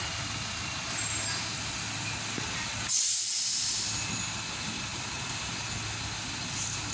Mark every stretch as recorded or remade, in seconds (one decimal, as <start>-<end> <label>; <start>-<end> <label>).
0.0-6.9 recorded